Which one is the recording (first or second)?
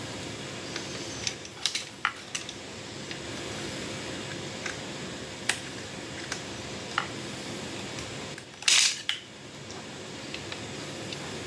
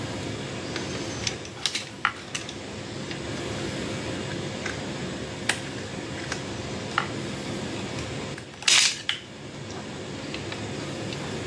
second